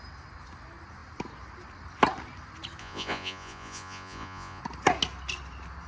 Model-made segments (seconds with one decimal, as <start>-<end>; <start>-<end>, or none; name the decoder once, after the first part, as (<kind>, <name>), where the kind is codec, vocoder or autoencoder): 2.8-4.6 (vocoder, Vocos)